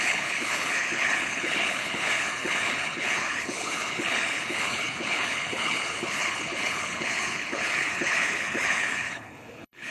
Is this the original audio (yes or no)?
no